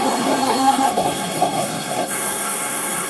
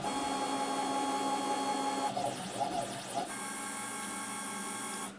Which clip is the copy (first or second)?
first